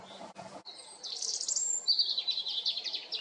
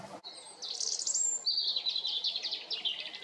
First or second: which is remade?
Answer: first